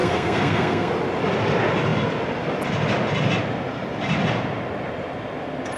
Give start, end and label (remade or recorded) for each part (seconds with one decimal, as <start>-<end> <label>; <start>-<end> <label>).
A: 0.0-0.9 remade; 0.9-5.8 recorded